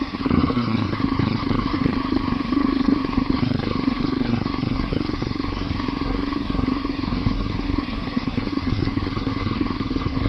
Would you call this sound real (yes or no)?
no